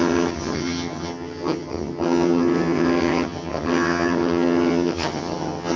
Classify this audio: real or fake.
fake